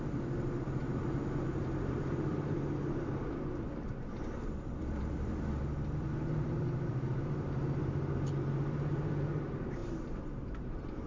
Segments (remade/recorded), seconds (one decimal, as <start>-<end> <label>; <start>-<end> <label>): 0.0-11.1 remade

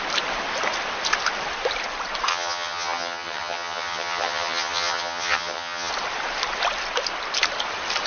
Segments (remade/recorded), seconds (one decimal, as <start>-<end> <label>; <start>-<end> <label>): 0.0-2.3 recorded; 2.3-5.9 remade; 5.9-8.1 recorded

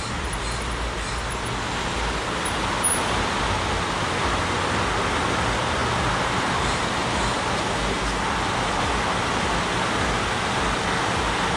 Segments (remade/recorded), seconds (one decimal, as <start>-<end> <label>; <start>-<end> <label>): 0.0-11.6 recorded

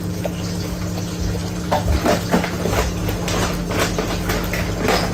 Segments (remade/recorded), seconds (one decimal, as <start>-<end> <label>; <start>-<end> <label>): 0.0-5.1 recorded

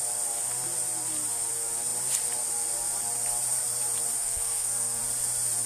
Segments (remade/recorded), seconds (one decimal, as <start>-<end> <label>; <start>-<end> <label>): 0.0-4.2 recorded; 4.2-5.0 remade; 5.0-5.7 recorded